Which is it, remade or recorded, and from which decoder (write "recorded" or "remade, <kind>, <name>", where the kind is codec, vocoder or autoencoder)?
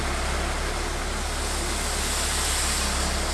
recorded